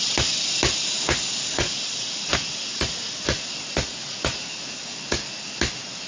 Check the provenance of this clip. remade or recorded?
recorded